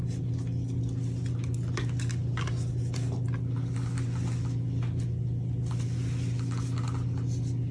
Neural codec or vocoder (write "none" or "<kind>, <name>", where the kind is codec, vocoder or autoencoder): none